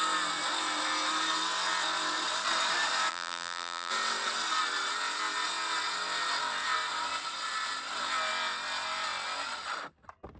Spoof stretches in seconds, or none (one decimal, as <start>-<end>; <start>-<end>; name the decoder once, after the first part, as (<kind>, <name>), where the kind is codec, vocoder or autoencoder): 3.1-3.9 (vocoder, BigVGAN v2)